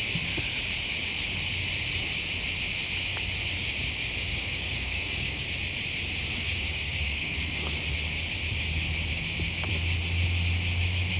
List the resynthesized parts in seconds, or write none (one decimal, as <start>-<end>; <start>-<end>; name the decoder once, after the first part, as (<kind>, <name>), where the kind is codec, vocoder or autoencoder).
4.3-5.4 (codec, DAC); 6.4-7.8